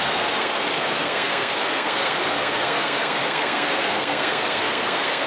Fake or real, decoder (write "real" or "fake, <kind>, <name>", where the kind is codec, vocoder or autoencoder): fake, codec, SNAC